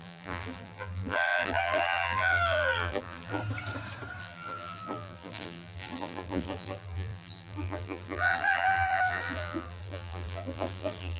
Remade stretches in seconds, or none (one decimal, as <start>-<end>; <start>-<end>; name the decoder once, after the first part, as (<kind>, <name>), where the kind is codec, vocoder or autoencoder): 0.0-3.4 (vocoder, BigVGAN v2); 4.2-11.2